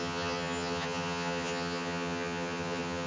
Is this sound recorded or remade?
remade